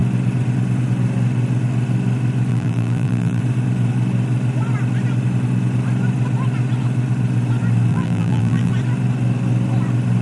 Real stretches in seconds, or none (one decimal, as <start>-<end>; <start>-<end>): 0.0-2.5; 3.4-7.9; 8.7-10.2